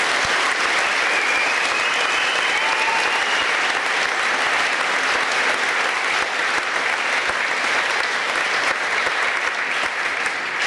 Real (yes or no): yes